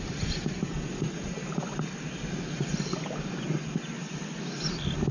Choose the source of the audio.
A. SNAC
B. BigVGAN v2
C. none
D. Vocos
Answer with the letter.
C